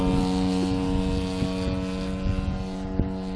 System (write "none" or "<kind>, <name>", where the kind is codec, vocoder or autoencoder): none